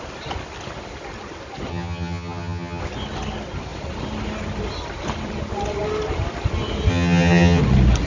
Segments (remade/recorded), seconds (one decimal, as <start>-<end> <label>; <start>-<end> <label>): 0.0-1.7 recorded; 1.7-2.8 remade; 2.8-6.9 recorded; 6.9-7.6 remade; 7.6-8.1 recorded